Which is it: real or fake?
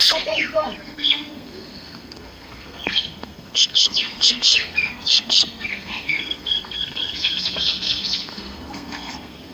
fake